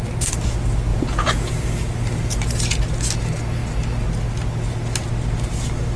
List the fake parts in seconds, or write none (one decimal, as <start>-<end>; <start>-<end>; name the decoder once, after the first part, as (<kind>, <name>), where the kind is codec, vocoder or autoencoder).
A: 0.9-1.5 (vocoder, Vocos)